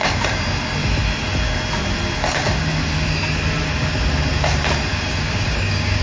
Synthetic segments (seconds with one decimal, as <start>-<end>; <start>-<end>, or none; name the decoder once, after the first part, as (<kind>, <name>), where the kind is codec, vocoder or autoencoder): 4.9-6.0 (codec, DAC)